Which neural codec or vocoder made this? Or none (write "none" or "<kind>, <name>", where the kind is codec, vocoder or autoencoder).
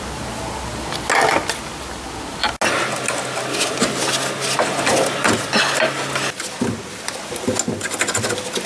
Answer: none